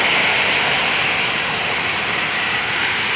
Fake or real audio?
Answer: real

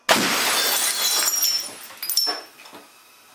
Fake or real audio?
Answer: real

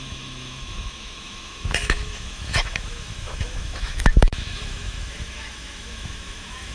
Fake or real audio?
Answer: fake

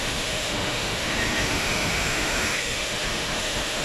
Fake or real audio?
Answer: fake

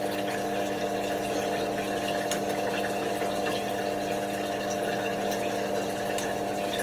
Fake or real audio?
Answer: real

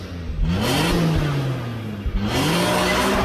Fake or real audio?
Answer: real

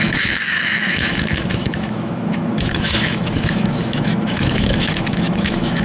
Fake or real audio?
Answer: fake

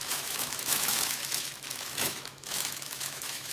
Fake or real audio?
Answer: fake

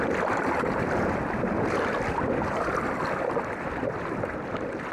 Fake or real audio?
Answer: real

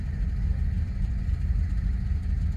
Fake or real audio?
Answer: real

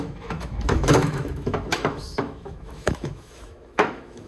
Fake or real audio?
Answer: fake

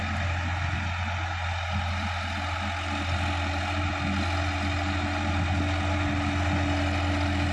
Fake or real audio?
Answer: real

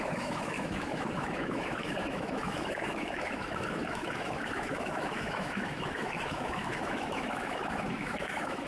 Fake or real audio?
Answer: fake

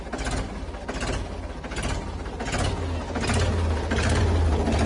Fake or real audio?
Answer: real